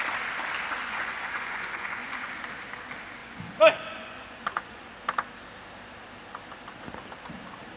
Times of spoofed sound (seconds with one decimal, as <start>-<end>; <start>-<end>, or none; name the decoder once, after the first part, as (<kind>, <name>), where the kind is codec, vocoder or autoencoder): 0.8-2.4 (vocoder, Vocos); 3.2-4.9